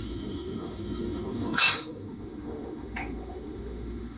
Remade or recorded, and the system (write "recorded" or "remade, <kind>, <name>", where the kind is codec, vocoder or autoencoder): remade, autoencoder, DAC-VAE